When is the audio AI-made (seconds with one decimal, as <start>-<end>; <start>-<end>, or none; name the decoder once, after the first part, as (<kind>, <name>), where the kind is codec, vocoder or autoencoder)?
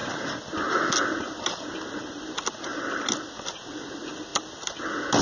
none